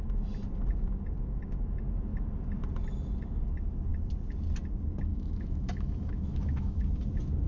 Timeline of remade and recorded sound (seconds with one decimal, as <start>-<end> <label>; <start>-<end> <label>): 0.0-5.1 recorded; 5.1-6.8 remade; 6.8-7.5 recorded